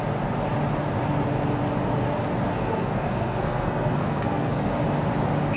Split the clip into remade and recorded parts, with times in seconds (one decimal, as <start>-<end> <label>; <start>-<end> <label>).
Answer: 0.0-2.5 recorded; 2.5-4.7 remade; 4.7-5.6 recorded